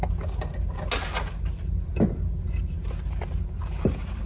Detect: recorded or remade recorded